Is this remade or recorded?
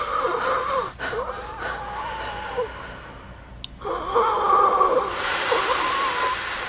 recorded